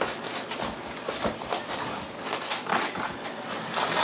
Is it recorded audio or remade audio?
recorded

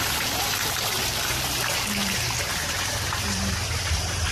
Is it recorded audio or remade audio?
remade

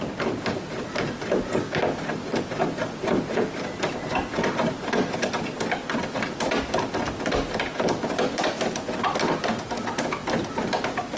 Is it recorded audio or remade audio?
recorded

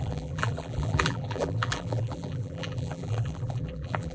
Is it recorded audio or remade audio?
remade